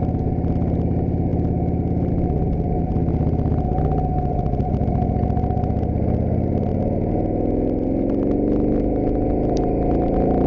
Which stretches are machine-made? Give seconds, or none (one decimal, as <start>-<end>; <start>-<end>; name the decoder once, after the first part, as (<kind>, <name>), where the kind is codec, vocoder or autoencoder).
none